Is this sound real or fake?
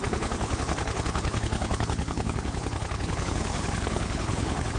fake